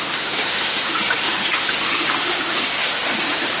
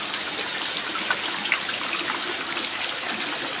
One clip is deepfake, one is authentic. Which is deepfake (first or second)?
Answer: first